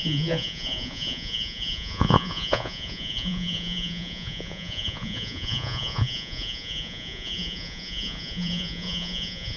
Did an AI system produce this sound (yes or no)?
yes